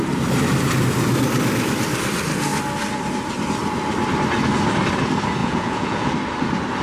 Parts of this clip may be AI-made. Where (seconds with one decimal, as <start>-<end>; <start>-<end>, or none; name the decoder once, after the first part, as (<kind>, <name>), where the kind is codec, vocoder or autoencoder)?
5.4-6.1 (vocoder, Vocos)